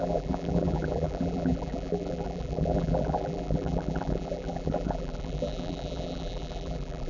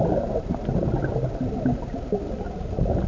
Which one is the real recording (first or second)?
second